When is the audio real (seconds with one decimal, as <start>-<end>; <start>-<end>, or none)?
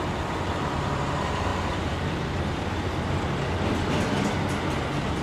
0.0-5.2